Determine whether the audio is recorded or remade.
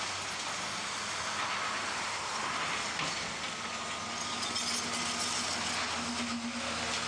recorded